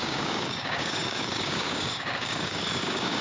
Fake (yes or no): yes